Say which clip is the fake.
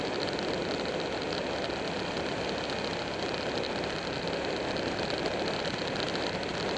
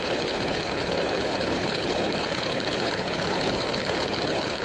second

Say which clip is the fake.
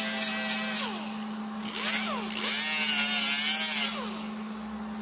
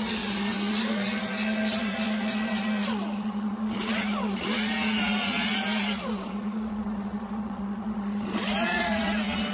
second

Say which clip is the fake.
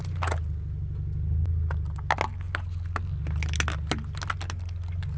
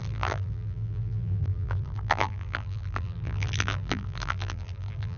second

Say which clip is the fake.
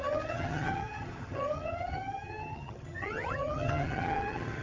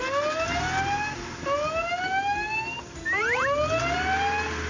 first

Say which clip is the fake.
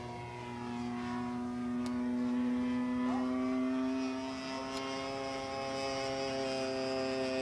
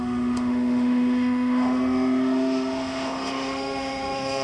second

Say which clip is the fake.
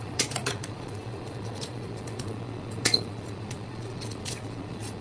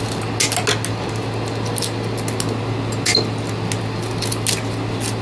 first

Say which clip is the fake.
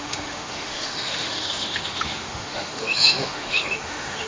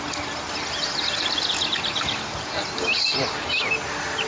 first